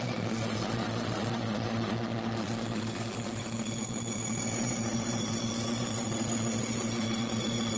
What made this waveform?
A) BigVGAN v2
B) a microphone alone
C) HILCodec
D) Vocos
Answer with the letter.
D